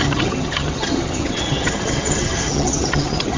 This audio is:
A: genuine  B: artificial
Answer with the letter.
B